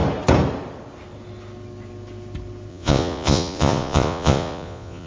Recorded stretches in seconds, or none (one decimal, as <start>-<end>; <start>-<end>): 0.0-2.7